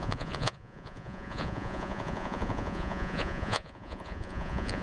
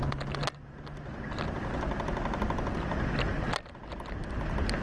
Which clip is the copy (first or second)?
first